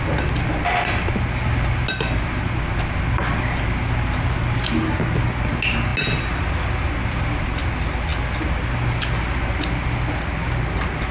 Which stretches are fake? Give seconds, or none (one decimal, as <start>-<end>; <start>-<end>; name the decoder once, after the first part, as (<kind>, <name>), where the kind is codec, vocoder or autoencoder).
none